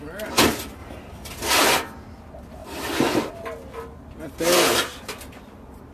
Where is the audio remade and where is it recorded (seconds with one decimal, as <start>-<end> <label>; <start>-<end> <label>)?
0.0-2.6 recorded; 2.6-3.3 remade; 3.3-5.9 recorded